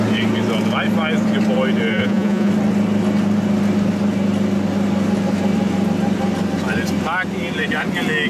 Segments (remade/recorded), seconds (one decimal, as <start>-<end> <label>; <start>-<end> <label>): 0.0-1.9 recorded; 1.9-2.5 remade; 2.5-8.3 recorded